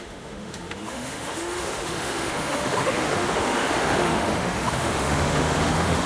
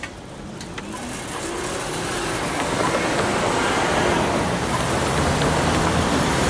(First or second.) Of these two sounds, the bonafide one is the second